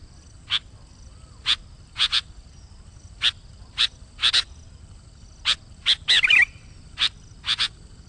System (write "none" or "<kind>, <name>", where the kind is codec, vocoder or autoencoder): none